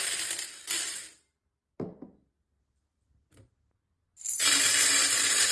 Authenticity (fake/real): real